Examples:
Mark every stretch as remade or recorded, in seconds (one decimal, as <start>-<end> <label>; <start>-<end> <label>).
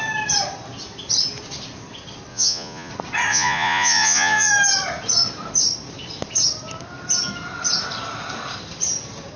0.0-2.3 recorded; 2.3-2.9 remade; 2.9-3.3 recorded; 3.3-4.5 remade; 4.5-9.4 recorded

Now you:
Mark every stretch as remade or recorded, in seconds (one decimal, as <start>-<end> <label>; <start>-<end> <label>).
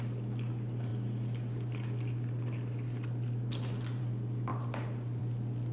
0.0-5.7 recorded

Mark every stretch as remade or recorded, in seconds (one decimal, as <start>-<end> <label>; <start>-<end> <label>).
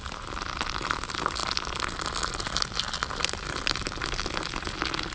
0.0-5.1 recorded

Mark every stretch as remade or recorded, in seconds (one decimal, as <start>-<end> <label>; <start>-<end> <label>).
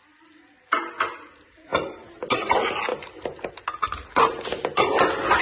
0.0-5.4 recorded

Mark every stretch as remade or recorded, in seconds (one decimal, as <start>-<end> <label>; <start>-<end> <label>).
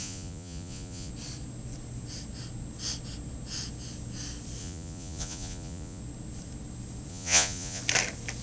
0.0-1.1 remade; 1.1-4.6 recorded; 4.6-6.0 remade; 6.0-7.1 recorded; 7.1-7.8 remade; 7.8-8.4 recorded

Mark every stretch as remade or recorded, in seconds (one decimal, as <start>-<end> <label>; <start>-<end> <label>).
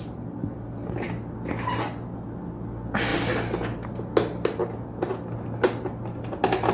0.0-6.7 recorded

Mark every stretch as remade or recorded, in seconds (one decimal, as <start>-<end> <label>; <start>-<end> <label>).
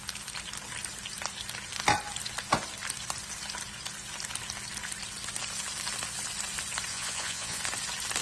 0.0-6.9 recorded; 6.9-7.6 remade; 7.6-8.2 recorded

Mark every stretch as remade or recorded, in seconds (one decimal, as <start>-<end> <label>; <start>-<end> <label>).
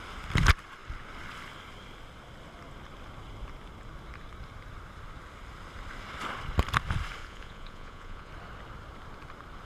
0.0-7.2 recorded; 7.2-8.3 remade; 8.3-9.7 recorded